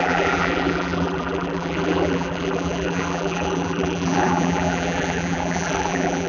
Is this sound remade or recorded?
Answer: remade